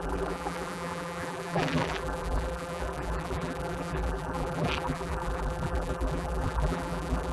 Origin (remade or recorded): remade